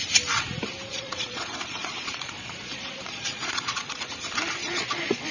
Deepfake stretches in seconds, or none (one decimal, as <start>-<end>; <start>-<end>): 0.9-4.1; 4.6-5.3